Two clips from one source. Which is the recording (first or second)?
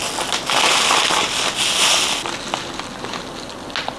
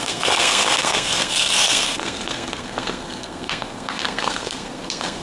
first